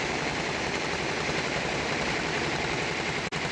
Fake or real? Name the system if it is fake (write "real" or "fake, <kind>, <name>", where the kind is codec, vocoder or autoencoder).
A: real